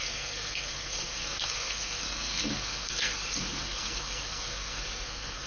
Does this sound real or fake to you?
fake